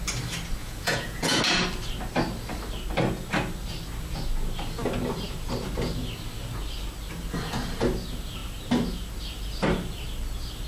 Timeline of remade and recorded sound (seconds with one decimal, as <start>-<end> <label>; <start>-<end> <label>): 0.0-0.6 recorded; 0.6-1.4 remade; 1.4-10.7 recorded